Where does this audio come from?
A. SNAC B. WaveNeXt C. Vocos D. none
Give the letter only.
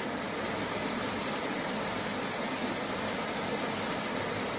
D